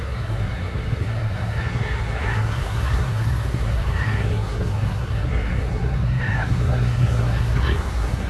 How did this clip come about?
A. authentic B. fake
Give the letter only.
B